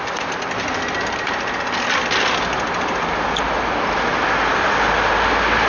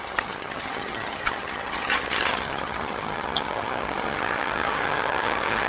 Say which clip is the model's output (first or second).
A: second